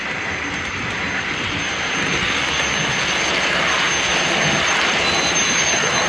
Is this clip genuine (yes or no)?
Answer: yes